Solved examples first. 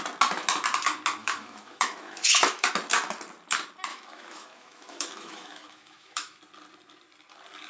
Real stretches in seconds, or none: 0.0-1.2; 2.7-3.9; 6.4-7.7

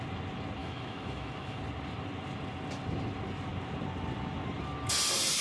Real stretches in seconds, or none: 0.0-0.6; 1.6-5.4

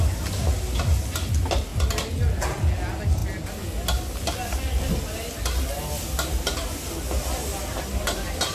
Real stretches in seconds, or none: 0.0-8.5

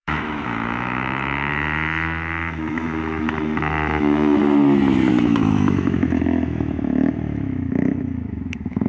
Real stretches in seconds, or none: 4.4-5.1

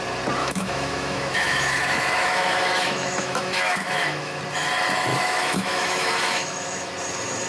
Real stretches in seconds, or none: 0.0-0.4; 4.4-5.1; 6.9-7.5

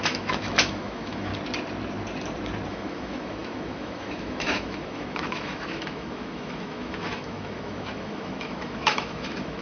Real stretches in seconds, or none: 1.3-2.7

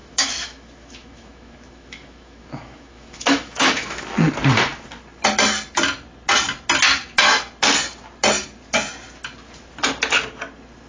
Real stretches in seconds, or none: 4.0-10.9